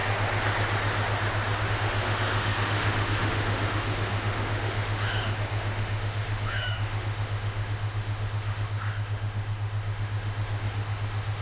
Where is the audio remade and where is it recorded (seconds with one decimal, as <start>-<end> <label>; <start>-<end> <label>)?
0.0-1.7 recorded; 1.7-11.4 remade